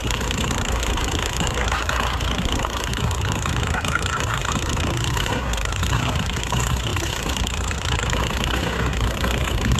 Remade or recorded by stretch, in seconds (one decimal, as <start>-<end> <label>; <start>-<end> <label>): 0.0-9.8 remade